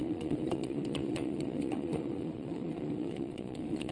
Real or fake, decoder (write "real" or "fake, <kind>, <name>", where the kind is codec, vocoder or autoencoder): fake, vocoder, Vocos